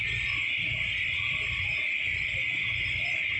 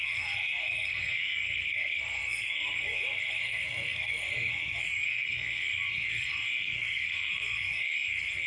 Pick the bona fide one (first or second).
first